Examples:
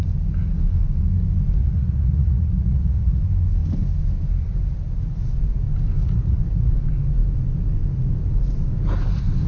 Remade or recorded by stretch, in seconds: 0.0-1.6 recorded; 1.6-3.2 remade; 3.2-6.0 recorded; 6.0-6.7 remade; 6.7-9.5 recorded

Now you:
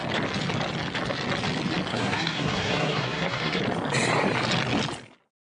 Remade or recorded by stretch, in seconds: 0.0-1.9 recorded; 1.9-3.6 remade; 3.6-5.6 recorded